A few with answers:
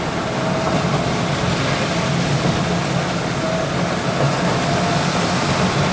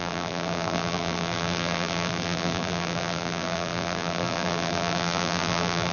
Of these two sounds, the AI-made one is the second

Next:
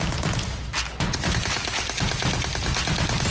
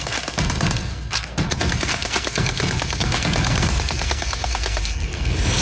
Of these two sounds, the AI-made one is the second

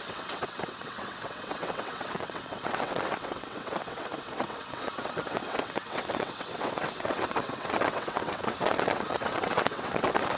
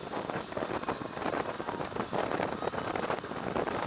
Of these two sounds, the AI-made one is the first